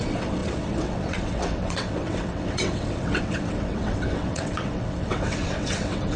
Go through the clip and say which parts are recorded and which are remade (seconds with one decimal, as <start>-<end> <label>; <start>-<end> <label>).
0.0-6.2 remade